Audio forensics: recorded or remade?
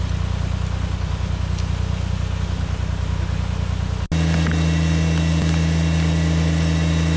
recorded